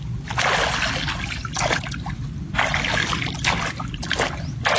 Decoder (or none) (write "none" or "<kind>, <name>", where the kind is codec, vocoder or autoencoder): none